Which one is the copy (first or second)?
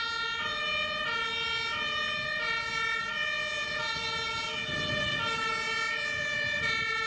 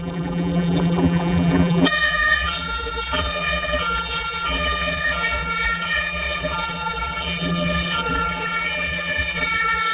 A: second